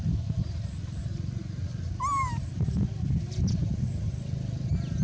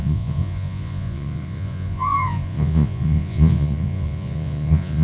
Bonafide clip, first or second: first